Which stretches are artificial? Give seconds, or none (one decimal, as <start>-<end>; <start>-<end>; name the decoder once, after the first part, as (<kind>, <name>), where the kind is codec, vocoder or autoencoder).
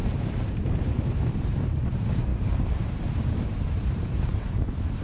0.0-5.0 (vocoder, BigVGAN v2)